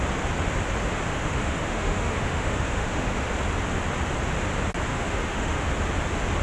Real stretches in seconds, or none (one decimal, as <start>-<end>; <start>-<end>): 0.0-1.1; 3.3-4.9; 5.7-6.4